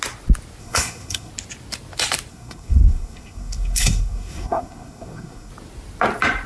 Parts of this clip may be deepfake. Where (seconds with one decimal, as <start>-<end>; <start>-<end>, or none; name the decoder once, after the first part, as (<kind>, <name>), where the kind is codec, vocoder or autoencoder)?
0.6-1.3 (codec, SNAC); 2.3-5.5